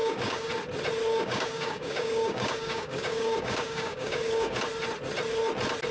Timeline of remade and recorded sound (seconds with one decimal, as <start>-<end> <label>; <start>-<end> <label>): 0.0-0.5 remade; 0.5-1.1 recorded; 1.1-4.6 remade; 4.6-5.9 recorded